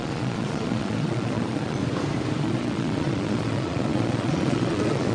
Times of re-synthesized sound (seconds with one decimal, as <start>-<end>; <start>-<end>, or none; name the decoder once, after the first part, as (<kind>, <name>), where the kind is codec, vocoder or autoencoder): 0.0-1.8 (vocoder, Vocos); 2.4-5.1